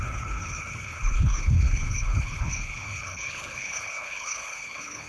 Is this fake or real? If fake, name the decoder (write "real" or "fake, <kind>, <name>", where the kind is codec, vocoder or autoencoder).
fake, codec, HILCodec